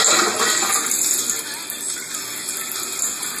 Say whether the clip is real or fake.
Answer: real